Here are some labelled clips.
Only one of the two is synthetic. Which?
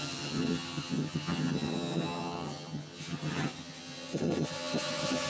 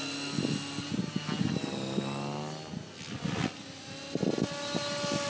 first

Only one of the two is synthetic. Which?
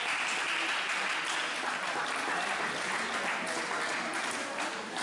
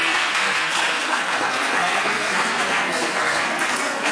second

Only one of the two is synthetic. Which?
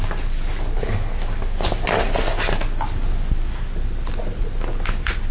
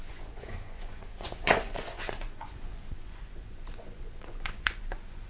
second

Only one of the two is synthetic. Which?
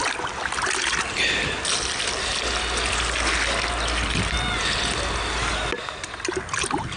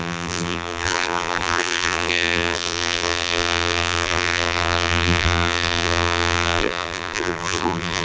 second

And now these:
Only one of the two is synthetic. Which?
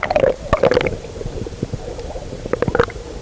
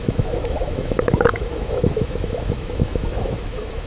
second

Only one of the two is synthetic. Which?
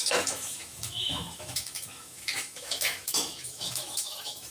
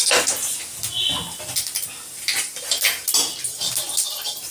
first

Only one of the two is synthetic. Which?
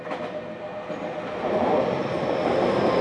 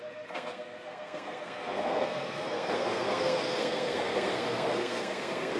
second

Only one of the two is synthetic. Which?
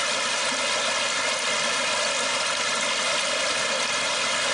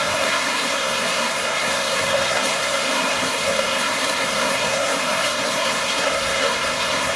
second